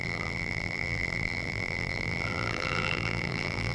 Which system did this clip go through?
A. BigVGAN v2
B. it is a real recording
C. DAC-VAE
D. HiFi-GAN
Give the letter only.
A